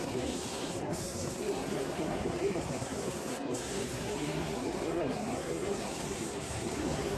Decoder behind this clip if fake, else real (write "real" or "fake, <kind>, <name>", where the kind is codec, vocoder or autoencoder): fake, codec, SNAC